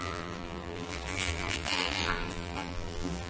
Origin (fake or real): fake